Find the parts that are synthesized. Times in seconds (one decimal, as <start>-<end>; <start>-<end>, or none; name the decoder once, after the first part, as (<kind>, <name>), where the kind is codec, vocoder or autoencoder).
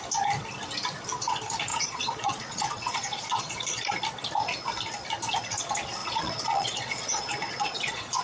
1.7-3.9 (vocoder, Vocos); 6.0-8.2